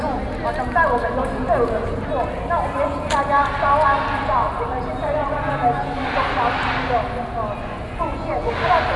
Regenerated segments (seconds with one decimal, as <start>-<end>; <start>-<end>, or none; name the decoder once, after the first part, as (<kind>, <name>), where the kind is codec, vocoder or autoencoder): 7.6-8.5 (vocoder, Vocos)